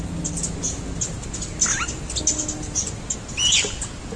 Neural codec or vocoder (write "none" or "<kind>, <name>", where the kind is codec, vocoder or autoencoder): none